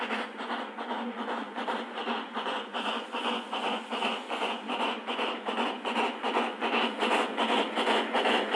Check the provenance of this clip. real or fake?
fake